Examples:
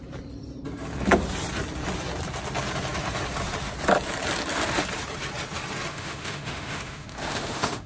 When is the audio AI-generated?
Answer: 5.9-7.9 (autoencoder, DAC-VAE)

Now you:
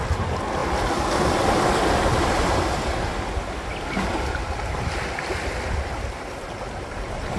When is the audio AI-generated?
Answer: none

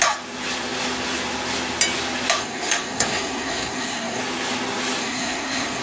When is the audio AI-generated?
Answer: 2.4-4.2 (codec, SNAC); 5.0-5.8